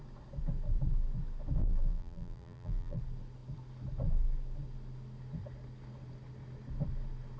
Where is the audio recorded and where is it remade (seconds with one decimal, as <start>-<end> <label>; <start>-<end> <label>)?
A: 0.0-1.6 recorded; 1.6-3.0 remade; 3.0-7.4 recorded